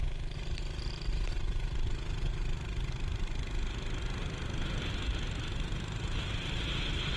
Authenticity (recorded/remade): recorded